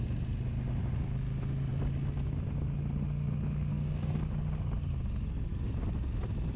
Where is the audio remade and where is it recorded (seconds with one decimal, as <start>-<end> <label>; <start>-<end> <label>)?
0.0-3.7 recorded; 3.7-4.2 remade; 4.2-6.6 recorded